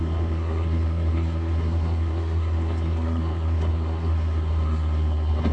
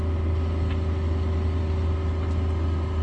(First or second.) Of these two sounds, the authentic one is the second